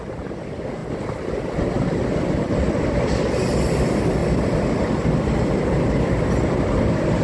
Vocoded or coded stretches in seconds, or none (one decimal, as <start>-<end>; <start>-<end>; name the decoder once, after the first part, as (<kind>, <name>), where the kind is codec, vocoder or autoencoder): none